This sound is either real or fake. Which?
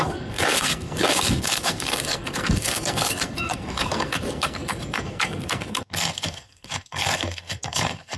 fake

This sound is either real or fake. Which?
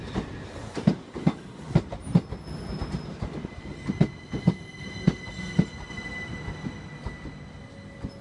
real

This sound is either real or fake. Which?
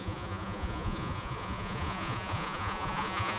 fake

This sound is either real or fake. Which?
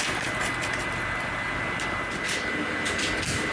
real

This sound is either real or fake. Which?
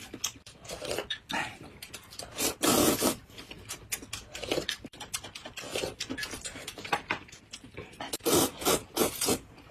real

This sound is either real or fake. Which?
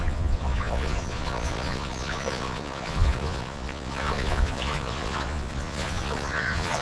fake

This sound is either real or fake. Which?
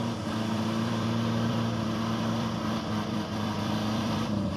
fake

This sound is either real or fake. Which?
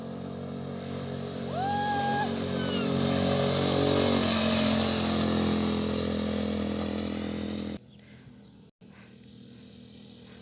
real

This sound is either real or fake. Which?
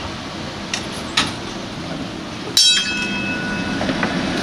real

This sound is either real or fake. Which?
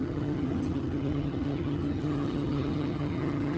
fake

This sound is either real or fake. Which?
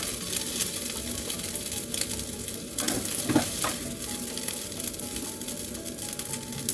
real